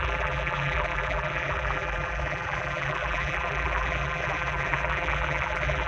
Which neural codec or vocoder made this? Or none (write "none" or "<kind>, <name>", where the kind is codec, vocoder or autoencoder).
vocoder, BigVGAN v2